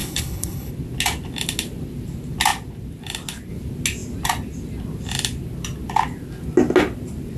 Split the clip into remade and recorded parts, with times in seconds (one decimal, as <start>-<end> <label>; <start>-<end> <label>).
0.0-0.7 remade; 0.7-7.4 recorded

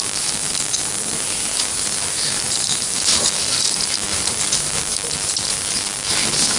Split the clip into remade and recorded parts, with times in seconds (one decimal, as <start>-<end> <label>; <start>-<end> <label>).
0.0-4.9 remade; 4.9-6.1 recorded; 6.1-6.6 remade

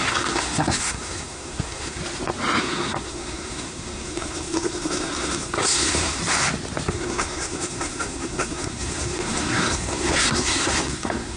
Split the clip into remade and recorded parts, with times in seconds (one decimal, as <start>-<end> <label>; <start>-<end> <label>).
0.0-2.0 remade; 2.0-2.6 recorded; 2.6-6.2 remade; 6.2-6.9 recorded; 6.9-11.4 remade

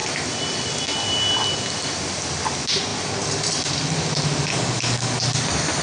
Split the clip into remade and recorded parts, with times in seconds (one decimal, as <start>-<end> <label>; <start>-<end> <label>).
0.0-4.5 recorded; 4.5-5.2 remade; 5.2-5.8 recorded

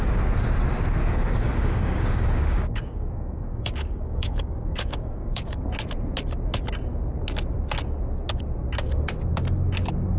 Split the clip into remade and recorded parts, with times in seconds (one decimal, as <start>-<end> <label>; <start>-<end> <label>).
0.0-1.0 recorded; 1.0-5.7 remade; 5.7-10.2 recorded

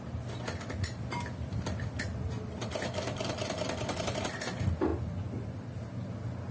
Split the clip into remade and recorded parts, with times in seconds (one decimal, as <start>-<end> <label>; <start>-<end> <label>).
0.0-6.5 recorded

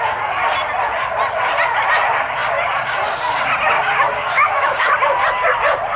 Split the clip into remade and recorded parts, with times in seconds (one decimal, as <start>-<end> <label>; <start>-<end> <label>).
0.0-4.2 recorded; 4.2-4.9 remade; 4.9-6.0 recorded